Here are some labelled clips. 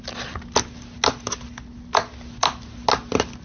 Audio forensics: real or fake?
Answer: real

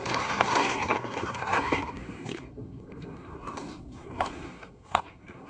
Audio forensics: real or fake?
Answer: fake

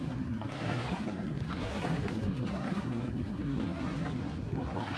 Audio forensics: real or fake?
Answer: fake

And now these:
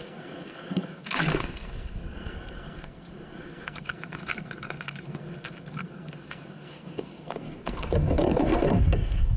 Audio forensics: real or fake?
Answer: fake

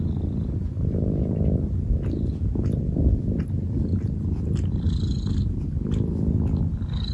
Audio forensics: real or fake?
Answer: real